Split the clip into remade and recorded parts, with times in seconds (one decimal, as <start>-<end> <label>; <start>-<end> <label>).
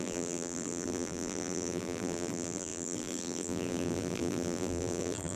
0.0-5.4 remade